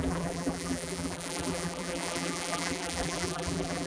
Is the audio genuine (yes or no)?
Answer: no